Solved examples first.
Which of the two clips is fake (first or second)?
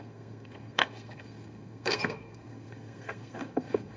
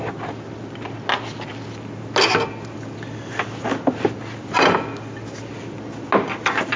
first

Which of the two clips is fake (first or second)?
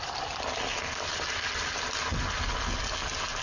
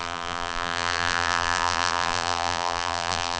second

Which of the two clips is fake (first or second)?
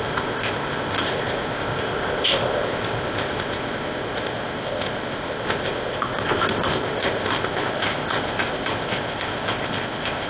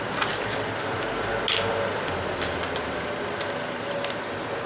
first